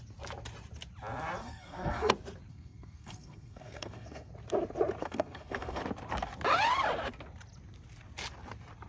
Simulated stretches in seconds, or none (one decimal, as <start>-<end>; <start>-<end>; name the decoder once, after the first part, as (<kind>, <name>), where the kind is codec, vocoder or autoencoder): 1.4-2.1 (codec, SNAC); 2.5-4.3; 5.0-5.8